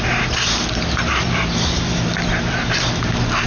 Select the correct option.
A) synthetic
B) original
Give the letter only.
B